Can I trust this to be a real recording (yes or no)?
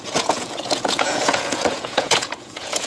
no